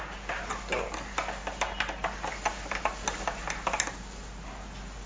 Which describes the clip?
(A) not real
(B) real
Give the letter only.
B